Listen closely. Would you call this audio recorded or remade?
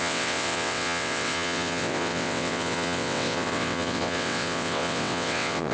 remade